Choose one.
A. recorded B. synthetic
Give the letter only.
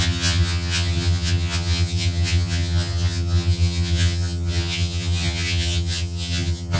B